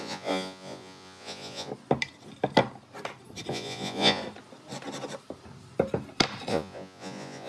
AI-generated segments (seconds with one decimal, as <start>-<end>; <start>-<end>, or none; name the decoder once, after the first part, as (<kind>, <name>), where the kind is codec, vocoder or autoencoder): 0.0-1.7 (vocoder, Vocos); 3.5-4.2; 6.5-7.5